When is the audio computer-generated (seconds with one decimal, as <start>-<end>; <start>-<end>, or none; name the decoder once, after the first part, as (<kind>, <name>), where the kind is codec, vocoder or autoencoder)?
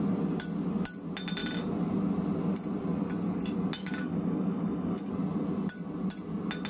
3.8-5.1 (codec, DAC)